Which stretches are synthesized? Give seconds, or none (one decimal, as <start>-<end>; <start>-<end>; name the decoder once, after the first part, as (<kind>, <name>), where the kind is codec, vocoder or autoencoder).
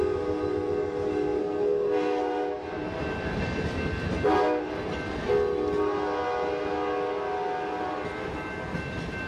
1.4-2.2 (codec, SNAC)